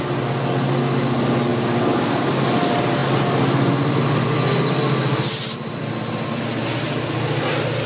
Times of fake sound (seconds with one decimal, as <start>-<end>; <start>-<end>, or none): 1.5-2.2